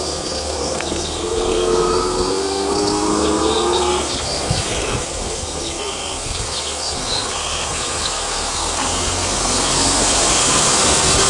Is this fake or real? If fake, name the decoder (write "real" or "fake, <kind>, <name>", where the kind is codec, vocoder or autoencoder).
fake, codec, SNAC